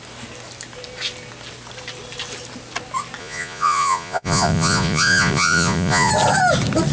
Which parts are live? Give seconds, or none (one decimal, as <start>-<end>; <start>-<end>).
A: 0.0-3.2; 6.1-6.9